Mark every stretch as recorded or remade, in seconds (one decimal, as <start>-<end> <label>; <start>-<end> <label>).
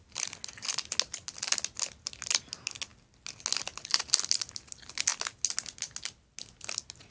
0.0-7.1 recorded